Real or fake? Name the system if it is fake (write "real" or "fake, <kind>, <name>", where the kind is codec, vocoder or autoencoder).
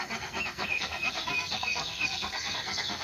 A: fake, codec, SNAC